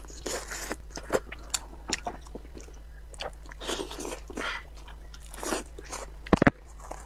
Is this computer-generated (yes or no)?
no